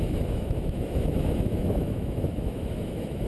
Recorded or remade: remade